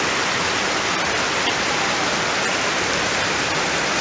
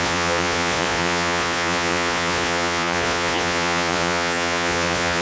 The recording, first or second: first